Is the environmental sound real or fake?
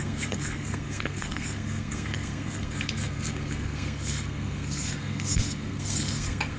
fake